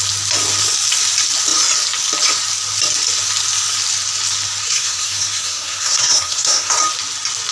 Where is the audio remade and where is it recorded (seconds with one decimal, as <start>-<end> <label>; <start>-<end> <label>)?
0.0-4.6 recorded; 4.6-6.7 remade; 6.7-7.5 recorded